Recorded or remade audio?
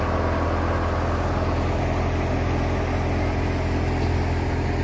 recorded